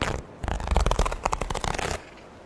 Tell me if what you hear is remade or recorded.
recorded